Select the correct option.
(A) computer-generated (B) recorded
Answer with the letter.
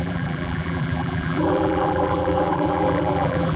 A